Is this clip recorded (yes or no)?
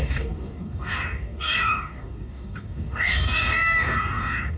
no